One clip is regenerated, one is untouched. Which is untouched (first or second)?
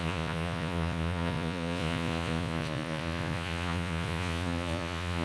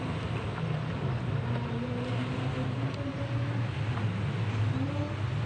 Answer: second